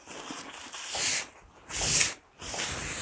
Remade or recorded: recorded